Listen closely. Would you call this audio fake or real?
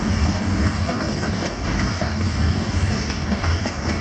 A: fake